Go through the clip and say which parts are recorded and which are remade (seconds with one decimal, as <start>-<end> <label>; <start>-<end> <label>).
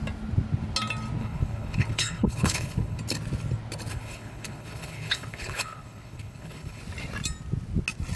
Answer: 0.0-1.2 recorded; 1.2-3.0 remade; 3.0-3.9 recorded; 3.9-6.8 remade; 6.8-8.2 recorded